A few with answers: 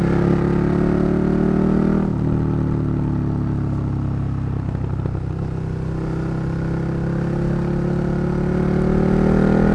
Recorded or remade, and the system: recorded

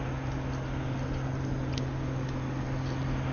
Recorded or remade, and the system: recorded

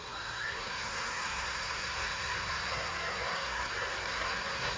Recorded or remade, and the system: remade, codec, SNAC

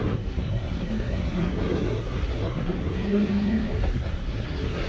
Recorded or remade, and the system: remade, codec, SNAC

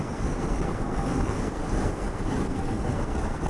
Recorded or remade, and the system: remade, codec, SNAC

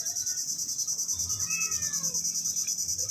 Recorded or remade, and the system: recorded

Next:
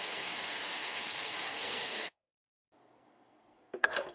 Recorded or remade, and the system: remade, codec, SNAC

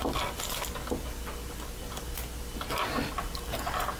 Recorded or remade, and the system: recorded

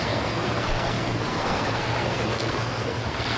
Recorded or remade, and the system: remade, codec, SNAC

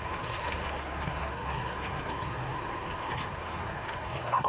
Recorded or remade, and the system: remade, codec, SNAC